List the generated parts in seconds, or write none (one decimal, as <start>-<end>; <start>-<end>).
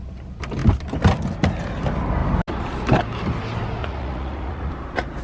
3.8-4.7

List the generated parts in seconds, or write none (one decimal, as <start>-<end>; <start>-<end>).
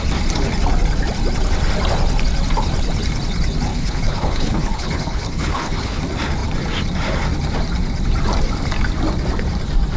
3.7-6.0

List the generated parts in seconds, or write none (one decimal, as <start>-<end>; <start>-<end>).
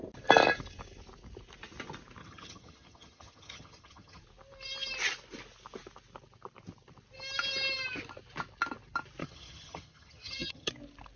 2.2-4.2; 9.2-10.7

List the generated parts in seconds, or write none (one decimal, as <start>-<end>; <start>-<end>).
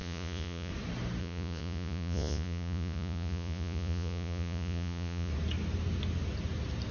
0.0-0.7; 1.2-5.3